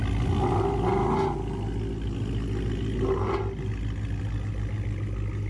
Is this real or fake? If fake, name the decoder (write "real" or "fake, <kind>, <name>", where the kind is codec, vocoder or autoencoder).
real